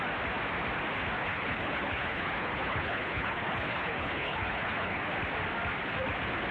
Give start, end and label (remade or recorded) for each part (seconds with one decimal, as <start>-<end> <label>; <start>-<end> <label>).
0.0-1.2 recorded; 1.2-5.1 remade; 5.1-6.5 recorded